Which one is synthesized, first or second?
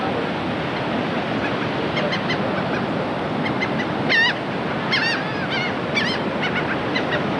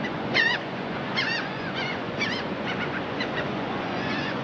second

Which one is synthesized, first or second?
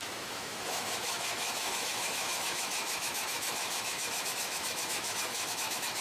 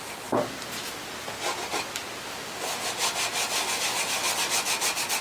first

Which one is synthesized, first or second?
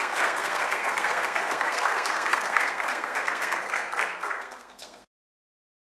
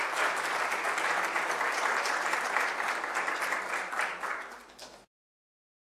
first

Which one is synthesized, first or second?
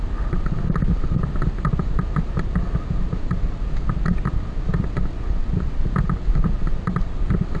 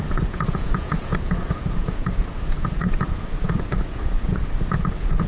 second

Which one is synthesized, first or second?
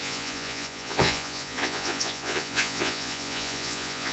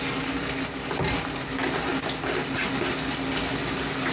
first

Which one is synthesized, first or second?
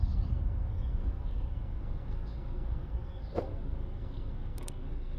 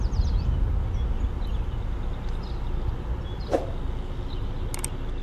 first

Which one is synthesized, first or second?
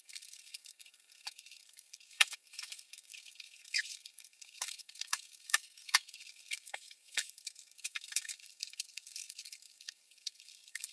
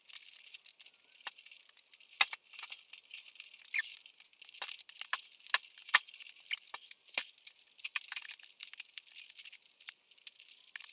first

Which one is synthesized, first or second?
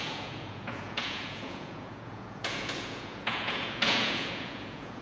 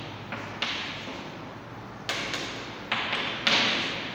first